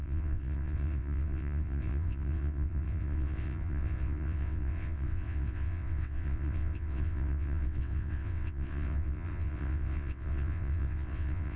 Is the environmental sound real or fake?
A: fake